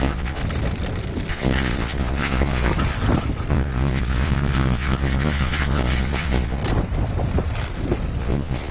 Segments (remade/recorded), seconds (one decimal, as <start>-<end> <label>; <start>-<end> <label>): 0.0-0.4 remade; 0.4-1.3 recorded; 1.3-2.7 remade; 2.7-3.5 recorded; 3.5-6.6 remade; 6.6-8.2 recorded; 8.2-8.7 remade